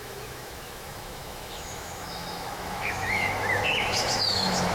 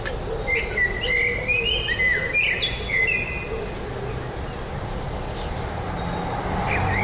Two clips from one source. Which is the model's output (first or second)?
first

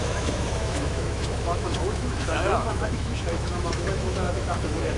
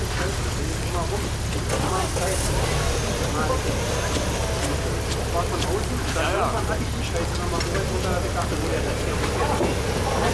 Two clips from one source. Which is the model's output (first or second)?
first